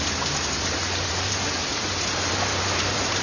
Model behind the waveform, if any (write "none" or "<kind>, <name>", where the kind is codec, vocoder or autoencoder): vocoder, BigVGAN v2